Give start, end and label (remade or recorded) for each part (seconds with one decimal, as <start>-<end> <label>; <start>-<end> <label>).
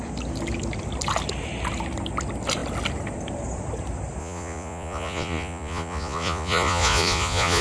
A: 0.0-4.2 recorded; 4.2-7.6 remade